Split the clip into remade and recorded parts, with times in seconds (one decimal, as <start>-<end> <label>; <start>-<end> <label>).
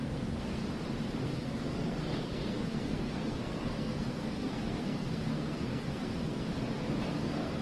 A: 0.0-0.6 remade; 0.6-1.2 recorded; 1.2-6.5 remade; 6.5-7.1 recorded; 7.1-7.6 remade